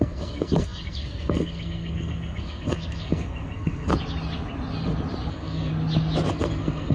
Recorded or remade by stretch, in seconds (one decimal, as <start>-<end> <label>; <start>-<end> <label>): 0.0-3.9 remade; 3.9-5.3 recorded; 5.3-5.7 remade; 5.7-6.3 recorded; 6.3-6.9 remade